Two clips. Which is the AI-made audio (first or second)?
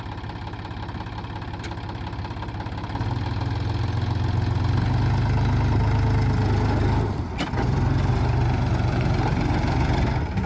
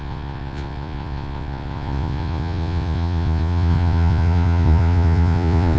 second